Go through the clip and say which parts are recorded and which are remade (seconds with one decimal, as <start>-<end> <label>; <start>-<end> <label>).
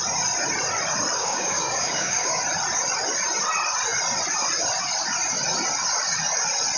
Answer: 0.0-1.2 recorded; 1.2-2.4 remade; 2.4-6.8 recorded